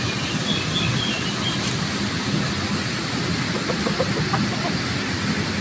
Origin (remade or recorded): recorded